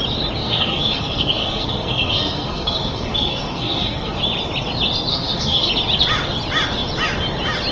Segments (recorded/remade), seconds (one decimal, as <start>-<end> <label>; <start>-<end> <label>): 0.0-0.4 recorded; 0.4-4.2 remade; 4.2-5.1 recorded; 5.1-5.7 remade; 5.7-7.7 recorded